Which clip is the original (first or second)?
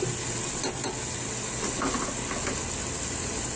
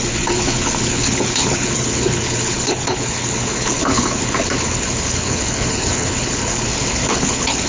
first